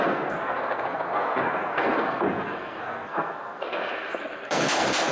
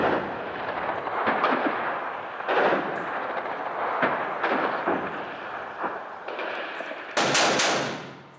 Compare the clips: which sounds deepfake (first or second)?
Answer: first